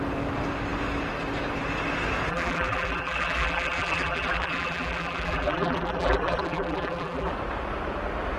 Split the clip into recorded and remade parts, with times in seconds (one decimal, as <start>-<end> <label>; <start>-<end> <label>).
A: 0.0-2.3 recorded; 2.3-7.3 remade; 7.3-8.4 recorded